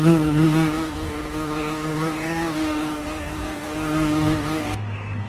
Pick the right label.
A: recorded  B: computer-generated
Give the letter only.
B